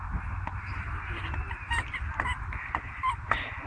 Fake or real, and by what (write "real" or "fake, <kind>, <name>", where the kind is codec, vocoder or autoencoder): real